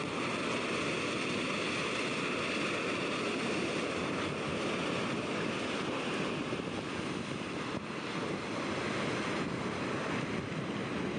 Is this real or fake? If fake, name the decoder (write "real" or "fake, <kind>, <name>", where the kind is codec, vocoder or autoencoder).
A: real